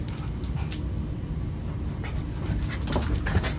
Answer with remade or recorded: recorded